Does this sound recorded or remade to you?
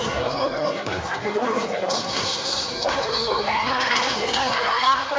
remade